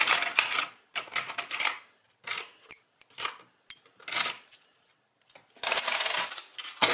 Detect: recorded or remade recorded